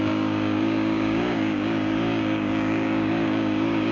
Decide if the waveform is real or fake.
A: fake